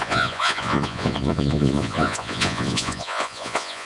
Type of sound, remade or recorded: remade